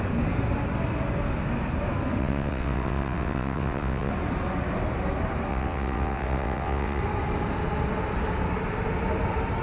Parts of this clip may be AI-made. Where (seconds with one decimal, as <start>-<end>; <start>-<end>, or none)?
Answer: 2.2-4.1; 5.5-7.0